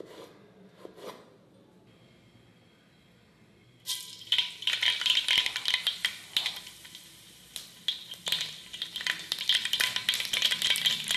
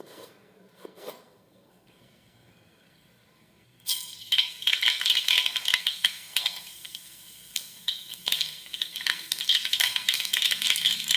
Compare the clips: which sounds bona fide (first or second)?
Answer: first